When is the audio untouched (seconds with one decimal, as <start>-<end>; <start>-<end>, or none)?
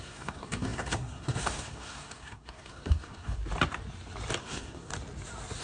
3.4-4.4; 4.9-5.6